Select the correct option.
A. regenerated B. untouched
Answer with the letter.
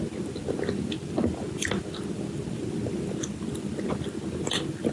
B